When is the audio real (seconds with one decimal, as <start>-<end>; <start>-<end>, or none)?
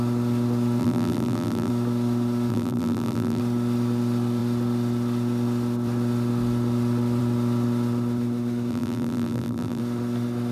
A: 0.0-0.8; 1.7-2.5; 3.4-8.7; 9.8-10.5